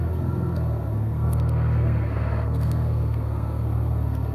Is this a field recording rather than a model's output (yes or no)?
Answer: no